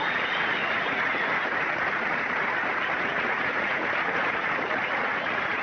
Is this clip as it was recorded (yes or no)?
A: no